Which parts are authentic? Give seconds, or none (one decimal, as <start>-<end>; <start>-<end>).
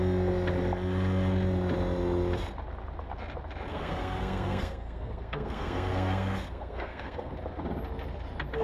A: 0.0-3.7; 7.3-8.6